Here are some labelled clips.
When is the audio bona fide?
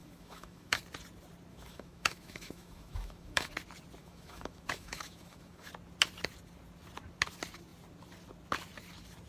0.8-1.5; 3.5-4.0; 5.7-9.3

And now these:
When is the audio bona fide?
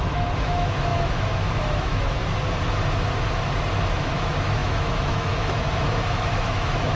2.2-3.9